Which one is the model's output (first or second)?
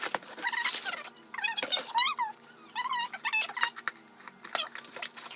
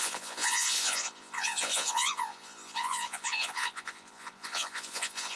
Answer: second